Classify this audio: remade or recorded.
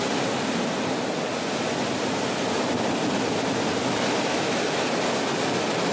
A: recorded